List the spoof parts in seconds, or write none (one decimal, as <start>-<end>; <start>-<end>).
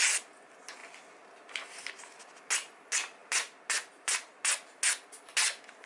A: none